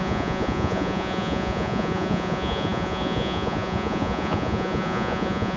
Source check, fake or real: fake